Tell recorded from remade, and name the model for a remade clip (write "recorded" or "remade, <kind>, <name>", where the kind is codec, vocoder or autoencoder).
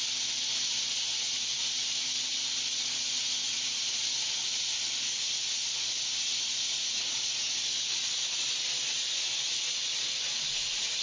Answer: recorded